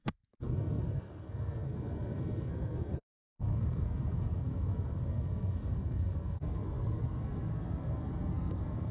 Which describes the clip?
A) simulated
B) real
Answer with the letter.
A